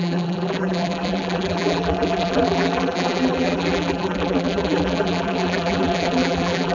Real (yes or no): no